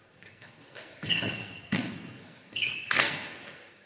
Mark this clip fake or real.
fake